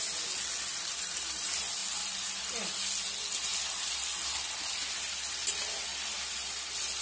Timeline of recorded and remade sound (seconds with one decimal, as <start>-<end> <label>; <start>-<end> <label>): 0.0-0.7 recorded; 0.7-1.4 remade; 1.4-1.8 recorded; 1.8-2.3 remade; 2.3-5.9 recorded; 5.9-7.0 remade